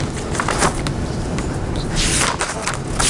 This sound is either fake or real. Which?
real